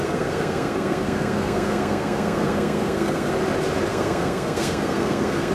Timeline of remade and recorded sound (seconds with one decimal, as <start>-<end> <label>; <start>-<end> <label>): 0.0-3.3 remade; 3.3-3.9 recorded; 3.9-5.5 remade

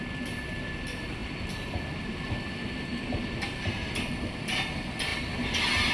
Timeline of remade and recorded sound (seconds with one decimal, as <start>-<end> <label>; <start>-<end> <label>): 0.0-5.9 recorded

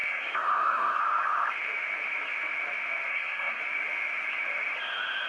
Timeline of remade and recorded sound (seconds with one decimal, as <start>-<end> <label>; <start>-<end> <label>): 0.0-1.0 remade; 1.0-3.1 recorded; 3.1-3.6 remade; 3.6-5.3 recorded

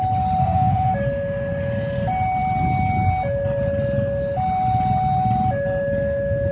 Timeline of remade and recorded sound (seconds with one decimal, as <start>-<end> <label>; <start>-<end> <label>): 0.0-0.4 recorded; 0.4-0.9 remade; 0.9-6.5 recorded